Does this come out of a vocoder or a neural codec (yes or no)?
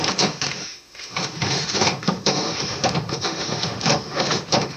yes